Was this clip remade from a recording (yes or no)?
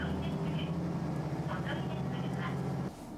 no